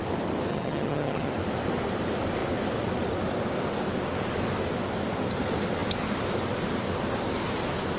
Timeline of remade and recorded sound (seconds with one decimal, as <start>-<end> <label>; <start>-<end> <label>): 0.0-0.5 recorded; 0.5-1.3 remade; 1.3-8.0 recorded

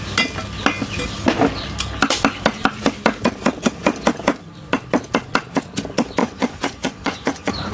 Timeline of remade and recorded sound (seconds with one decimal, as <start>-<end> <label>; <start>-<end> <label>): 0.0-6.2 recorded; 6.2-7.7 remade